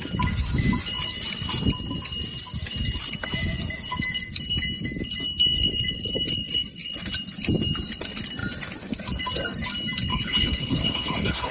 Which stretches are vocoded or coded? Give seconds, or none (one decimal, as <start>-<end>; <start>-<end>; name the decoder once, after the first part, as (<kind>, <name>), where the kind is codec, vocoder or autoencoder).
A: 10.1-11.5 (codec, HILCodec)